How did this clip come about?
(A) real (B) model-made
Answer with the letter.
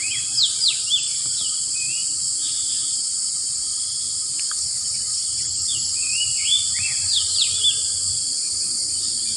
A